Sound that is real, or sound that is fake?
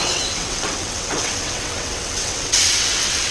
fake